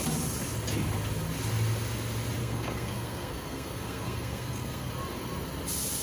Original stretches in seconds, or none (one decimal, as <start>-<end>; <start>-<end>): 0.0-2.4; 4.9-6.0